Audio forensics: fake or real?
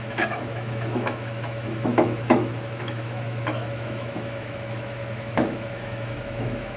fake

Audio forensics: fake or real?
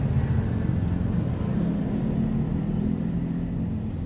real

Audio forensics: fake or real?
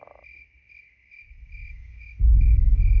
real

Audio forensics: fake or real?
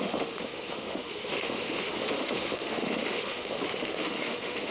fake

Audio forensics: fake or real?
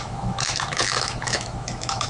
fake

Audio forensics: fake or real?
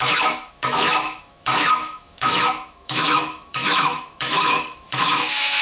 fake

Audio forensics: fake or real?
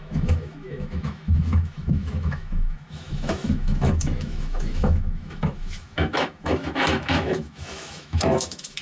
fake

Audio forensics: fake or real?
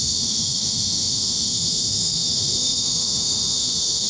fake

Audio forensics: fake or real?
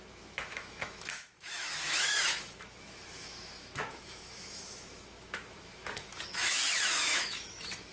fake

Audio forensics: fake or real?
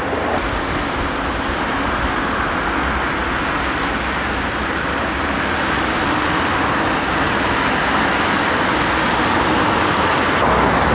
real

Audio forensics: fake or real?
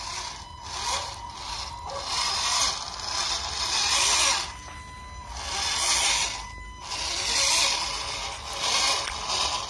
real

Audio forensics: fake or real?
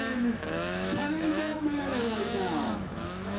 fake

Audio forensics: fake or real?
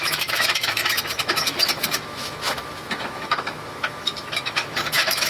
fake